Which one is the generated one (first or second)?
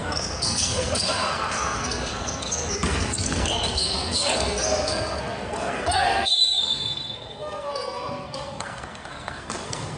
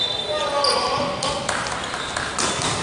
first